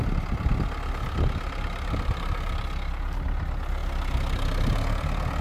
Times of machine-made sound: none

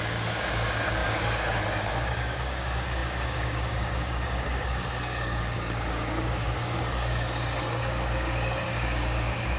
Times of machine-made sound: 0.0-9.6 (codec, DAC)

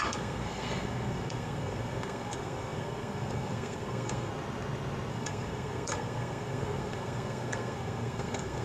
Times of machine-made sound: 0.0-4.3 (codec, SNAC); 5.1-8.6